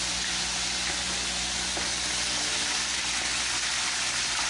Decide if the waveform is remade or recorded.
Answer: recorded